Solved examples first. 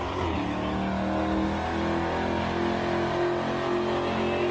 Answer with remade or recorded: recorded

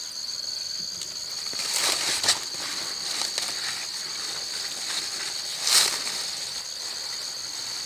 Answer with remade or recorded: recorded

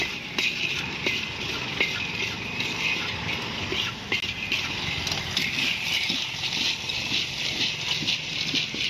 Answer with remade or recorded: recorded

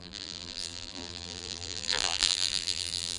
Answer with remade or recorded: remade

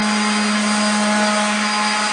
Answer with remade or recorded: recorded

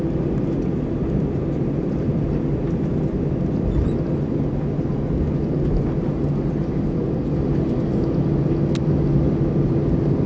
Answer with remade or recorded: recorded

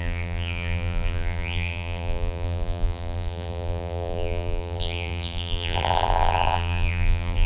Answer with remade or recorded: remade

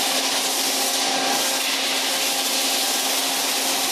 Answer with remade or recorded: recorded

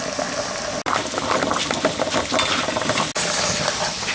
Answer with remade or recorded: recorded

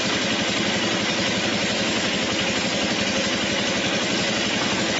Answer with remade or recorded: recorded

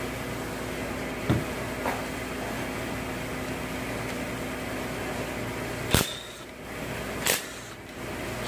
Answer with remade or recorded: recorded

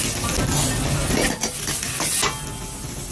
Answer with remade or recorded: recorded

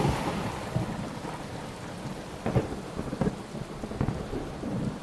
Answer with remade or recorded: remade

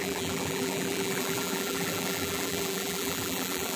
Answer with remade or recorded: remade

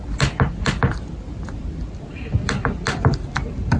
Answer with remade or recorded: recorded